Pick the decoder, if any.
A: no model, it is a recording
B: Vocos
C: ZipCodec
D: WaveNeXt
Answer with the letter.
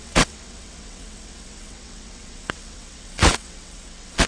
D